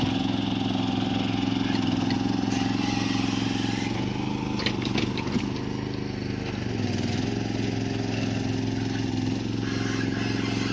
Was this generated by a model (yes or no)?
no